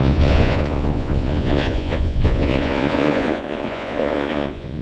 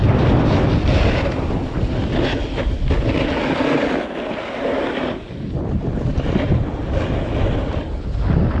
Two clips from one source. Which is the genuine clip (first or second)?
second